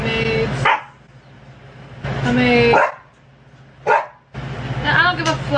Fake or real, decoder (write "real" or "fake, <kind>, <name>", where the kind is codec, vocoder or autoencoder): real